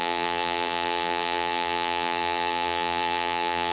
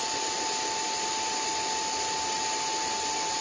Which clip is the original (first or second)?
second